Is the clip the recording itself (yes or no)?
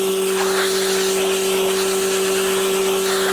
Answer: yes